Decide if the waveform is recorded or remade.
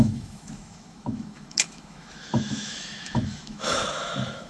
remade